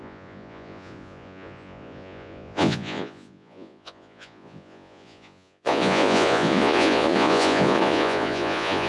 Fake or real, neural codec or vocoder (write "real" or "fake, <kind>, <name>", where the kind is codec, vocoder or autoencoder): fake, vocoder, Vocos